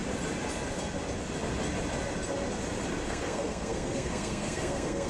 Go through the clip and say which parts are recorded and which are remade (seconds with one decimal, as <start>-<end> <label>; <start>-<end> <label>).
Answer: 0.0-3.1 recorded; 3.1-5.1 remade